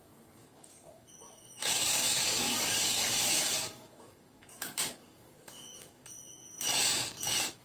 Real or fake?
fake